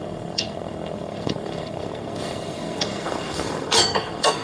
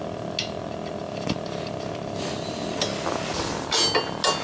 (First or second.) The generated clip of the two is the first